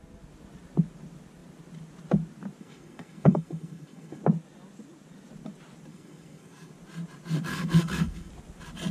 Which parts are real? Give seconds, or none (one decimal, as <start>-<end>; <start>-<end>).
0.0-2.6; 4.2-5.9; 6.7-7.5; 8.3-8.9